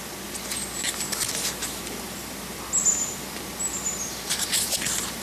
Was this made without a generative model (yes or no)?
yes